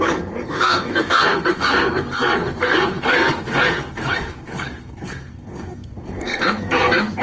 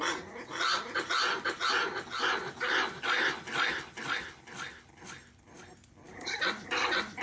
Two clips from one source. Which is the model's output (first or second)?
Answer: first